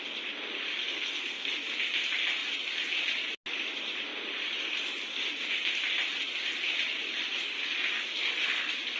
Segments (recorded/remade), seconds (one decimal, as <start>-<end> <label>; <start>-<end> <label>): 0.0-0.8 recorded; 0.8-1.5 remade; 1.5-9.0 recorded